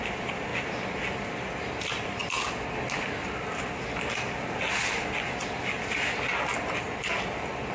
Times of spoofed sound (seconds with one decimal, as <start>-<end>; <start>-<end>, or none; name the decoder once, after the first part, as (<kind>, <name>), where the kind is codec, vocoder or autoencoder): none

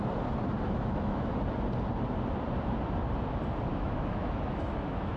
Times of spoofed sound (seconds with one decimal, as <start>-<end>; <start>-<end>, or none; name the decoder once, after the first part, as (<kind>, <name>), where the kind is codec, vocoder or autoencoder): 0.7-1.3 (autoencoder, DAC-VAE); 3.7-5.2

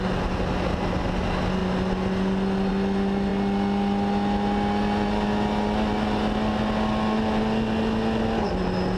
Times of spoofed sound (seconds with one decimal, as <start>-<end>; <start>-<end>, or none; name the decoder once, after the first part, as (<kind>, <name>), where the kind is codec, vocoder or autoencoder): none

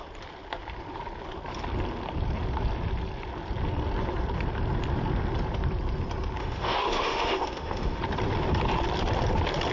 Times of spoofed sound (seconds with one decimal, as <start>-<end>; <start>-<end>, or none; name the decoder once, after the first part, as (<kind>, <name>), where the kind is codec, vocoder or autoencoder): 6.4-8.0 (autoencoder, DAC-VAE)

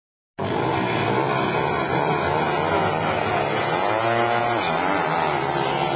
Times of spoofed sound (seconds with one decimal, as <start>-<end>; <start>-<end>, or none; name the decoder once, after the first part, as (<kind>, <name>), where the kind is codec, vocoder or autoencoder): none

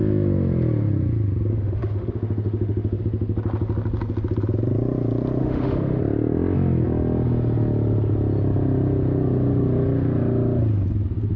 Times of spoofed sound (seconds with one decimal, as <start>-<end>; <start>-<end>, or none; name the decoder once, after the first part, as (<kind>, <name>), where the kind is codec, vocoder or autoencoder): 1.5-3.0 (autoencoder, DAC-VAE); 5.4-6.0

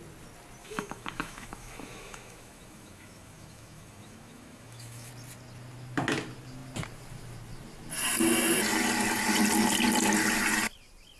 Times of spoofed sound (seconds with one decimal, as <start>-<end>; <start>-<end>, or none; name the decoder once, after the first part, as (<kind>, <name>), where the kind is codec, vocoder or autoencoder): 0.6-5.1 (autoencoder, DAC-VAE)

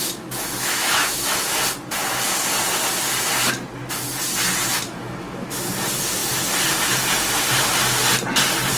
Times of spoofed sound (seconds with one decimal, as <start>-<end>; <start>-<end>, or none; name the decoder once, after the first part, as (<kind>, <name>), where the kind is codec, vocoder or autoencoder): 0.0-1.4 (autoencoder, DAC-VAE); 4.7-5.6